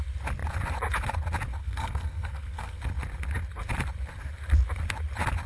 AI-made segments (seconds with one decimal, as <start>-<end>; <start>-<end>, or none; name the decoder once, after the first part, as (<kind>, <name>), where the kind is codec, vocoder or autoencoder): 1.6-2.8 (codec, SNAC)